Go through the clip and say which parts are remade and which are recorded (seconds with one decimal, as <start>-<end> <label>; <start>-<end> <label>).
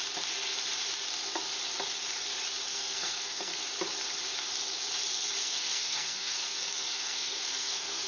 0.0-2.7 recorded; 2.7-3.6 remade; 3.6-5.4 recorded; 5.4-8.1 remade